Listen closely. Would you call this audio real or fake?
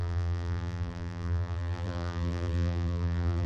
fake